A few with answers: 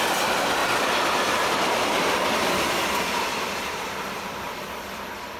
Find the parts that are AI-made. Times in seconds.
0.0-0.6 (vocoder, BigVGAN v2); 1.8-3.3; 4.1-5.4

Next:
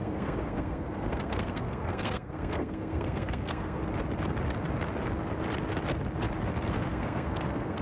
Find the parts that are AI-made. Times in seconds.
0.0-3.8 (codec, SNAC); 6.7-7.8